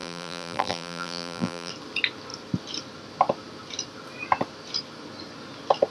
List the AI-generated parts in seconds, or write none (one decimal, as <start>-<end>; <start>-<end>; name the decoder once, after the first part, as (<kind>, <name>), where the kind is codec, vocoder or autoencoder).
0.0-1.7 (vocoder, BigVGAN v2)